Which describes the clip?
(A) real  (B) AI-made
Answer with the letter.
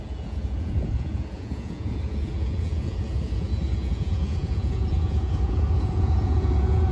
B